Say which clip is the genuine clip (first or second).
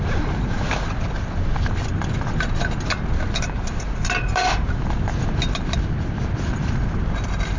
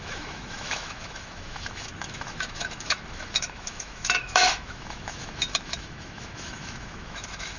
first